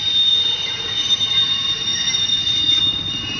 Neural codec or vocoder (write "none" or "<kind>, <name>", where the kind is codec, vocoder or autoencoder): vocoder, BigVGAN v2